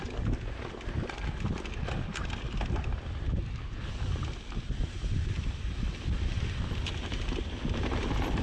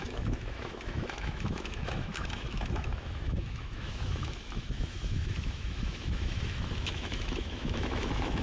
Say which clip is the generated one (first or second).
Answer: second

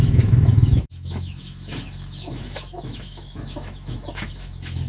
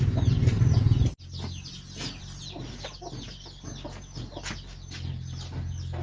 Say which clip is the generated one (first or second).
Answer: first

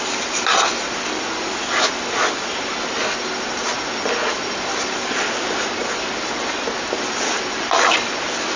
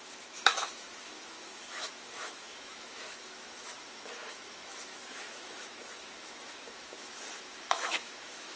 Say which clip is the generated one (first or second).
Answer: second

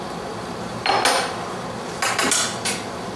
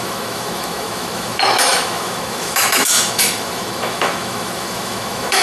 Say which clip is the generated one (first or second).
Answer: second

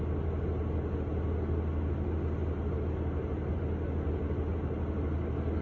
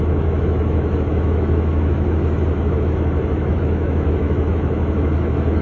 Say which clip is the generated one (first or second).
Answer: second